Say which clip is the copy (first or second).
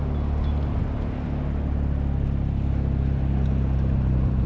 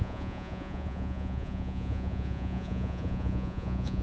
second